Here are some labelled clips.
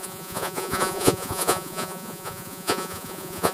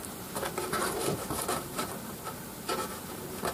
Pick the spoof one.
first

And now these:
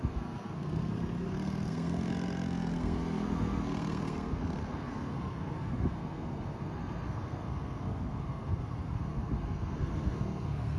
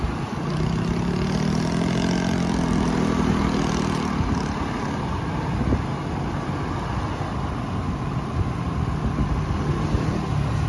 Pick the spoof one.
first